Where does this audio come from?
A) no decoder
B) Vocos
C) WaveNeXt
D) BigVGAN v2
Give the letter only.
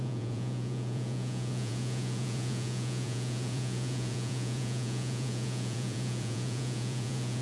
B